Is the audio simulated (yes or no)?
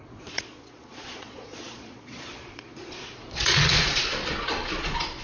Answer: yes